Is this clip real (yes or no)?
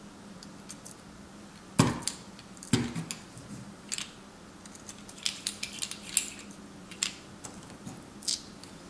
yes